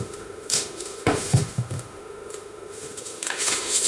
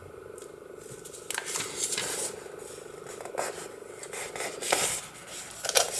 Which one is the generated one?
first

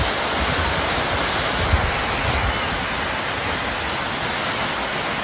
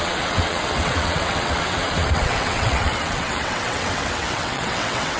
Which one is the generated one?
second